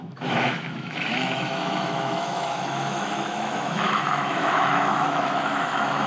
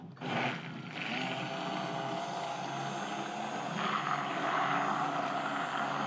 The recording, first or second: second